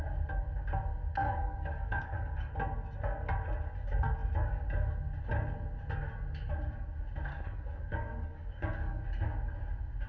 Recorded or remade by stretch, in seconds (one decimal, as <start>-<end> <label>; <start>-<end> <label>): 0.0-1.2 recorded; 1.2-2.5 remade; 2.5-7.3 recorded; 7.3-9.0 remade; 9.0-10.1 recorded